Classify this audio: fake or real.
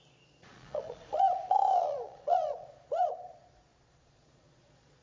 fake